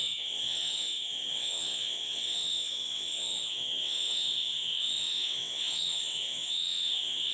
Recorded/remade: remade